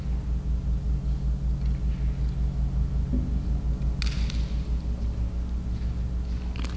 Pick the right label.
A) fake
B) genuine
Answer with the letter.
B